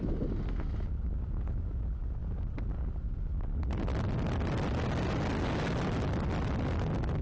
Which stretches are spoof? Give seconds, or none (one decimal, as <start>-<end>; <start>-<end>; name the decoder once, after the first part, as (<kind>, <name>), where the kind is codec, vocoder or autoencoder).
none